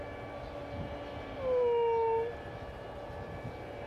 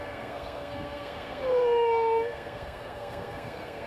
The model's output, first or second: second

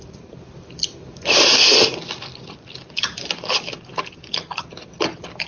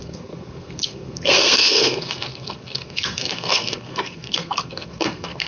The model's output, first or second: second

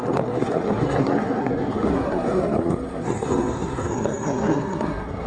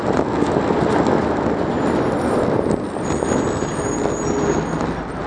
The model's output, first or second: first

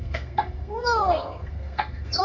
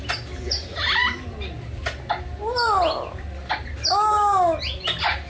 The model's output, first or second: first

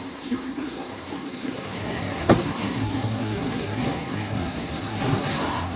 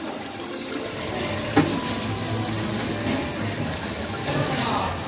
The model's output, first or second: first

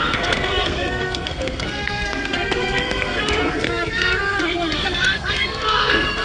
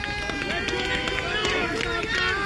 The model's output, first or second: first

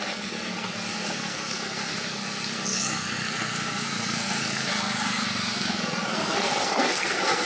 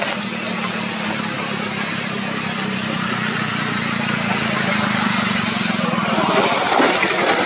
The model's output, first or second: first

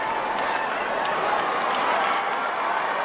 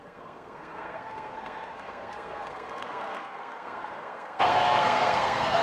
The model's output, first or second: second